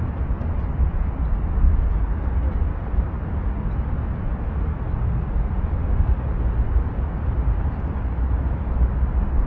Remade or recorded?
recorded